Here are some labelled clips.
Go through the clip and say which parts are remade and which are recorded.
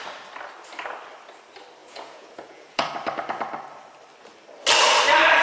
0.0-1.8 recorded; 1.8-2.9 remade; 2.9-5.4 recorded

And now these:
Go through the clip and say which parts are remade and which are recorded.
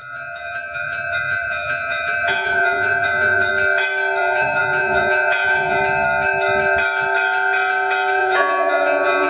0.0-3.5 remade; 3.5-4.2 recorded; 4.2-5.8 remade; 5.8-8.2 recorded; 8.2-9.3 remade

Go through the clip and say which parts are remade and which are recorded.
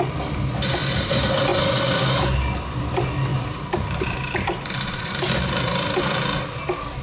0.0-3.3 recorded; 3.3-6.0 remade; 6.0-7.0 recorded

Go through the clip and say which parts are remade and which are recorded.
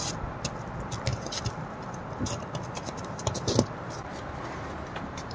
0.0-5.3 recorded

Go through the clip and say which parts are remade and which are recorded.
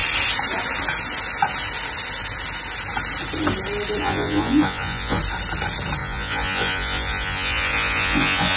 0.0-4.0 recorded; 4.0-5.2 remade; 5.2-6.0 recorded; 6.0-8.6 remade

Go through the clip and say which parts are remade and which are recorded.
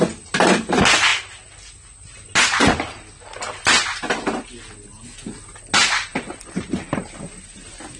0.0-8.0 recorded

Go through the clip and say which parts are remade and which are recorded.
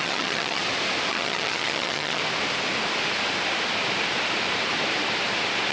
0.0-0.6 remade; 0.6-1.1 recorded; 1.1-2.2 remade; 2.2-5.7 recorded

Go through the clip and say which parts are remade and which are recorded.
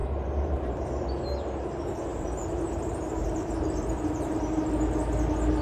0.0-1.0 remade; 1.0-2.1 recorded; 2.1-4.7 remade; 4.7-5.6 recorded